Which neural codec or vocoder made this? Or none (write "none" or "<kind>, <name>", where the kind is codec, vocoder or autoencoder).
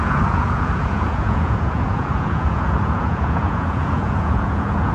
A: vocoder, Vocos